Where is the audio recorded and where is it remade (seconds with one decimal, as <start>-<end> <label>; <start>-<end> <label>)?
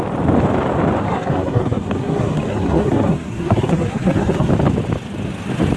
0.0-1.0 recorded; 1.0-4.5 remade; 4.5-5.8 recorded